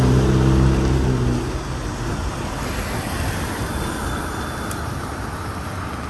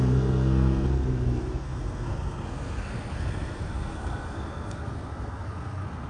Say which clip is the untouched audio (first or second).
first